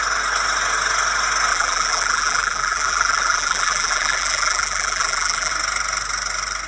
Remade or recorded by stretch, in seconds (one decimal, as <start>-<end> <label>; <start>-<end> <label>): 0.0-1.5 recorded; 1.5-5.5 remade; 5.5-6.7 recorded